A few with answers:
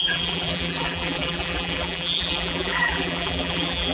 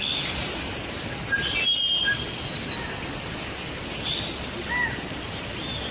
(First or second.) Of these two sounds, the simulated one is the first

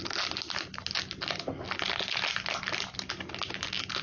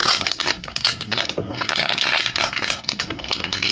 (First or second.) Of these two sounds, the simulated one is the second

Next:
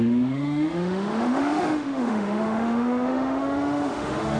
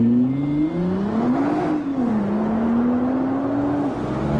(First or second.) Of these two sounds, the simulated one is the first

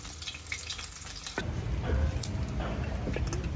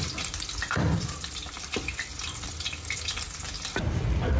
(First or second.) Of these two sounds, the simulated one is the second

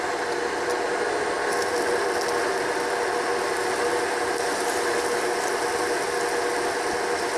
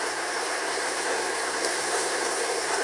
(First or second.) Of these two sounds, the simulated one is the second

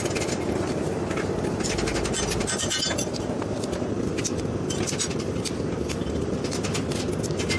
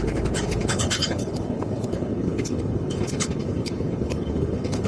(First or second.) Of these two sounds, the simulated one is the second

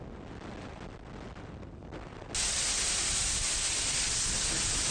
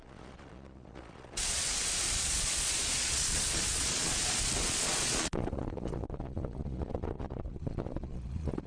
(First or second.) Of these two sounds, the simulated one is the second